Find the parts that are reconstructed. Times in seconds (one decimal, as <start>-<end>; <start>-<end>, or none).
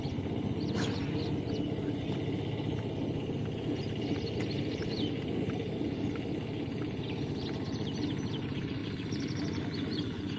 none